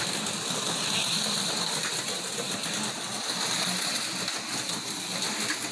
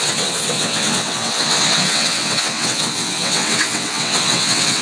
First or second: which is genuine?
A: first